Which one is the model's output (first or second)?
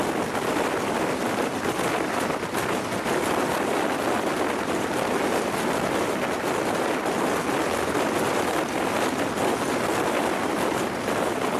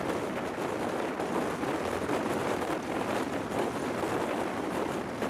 second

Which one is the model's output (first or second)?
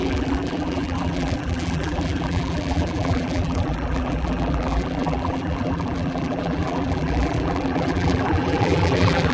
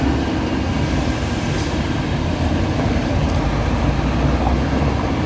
first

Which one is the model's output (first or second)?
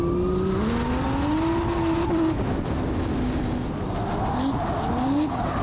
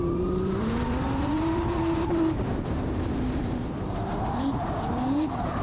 second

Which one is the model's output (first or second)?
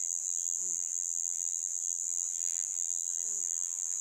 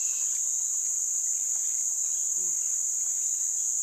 first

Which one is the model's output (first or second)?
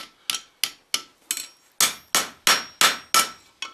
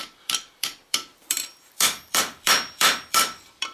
second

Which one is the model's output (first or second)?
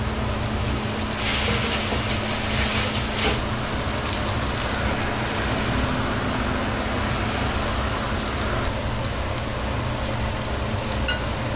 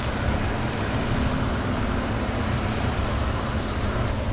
second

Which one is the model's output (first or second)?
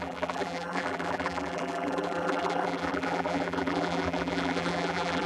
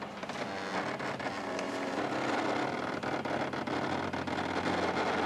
first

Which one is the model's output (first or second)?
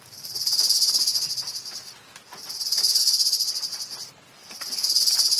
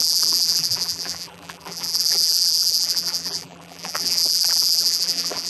second